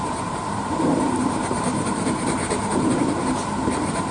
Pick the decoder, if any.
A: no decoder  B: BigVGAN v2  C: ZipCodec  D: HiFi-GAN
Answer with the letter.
B